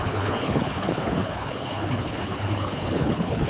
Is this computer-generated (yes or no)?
yes